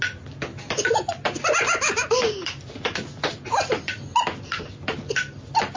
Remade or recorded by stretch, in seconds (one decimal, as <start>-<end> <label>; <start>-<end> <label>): 0.0-5.8 recorded